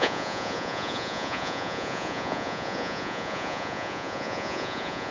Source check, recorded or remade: remade